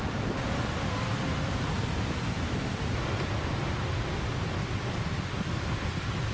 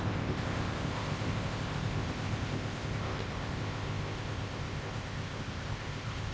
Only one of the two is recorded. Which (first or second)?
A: first